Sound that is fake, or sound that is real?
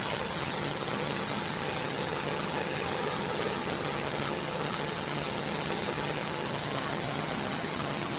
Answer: fake